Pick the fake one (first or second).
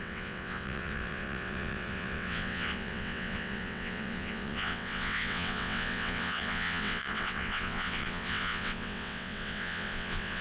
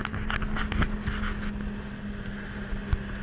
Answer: first